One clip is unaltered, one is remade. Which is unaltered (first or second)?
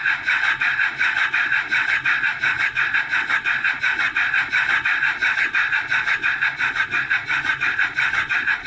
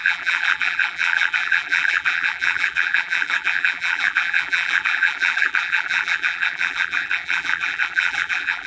first